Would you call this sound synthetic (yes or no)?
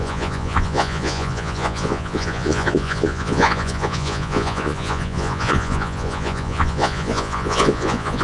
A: yes